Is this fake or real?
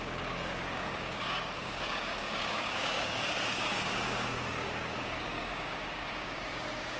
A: fake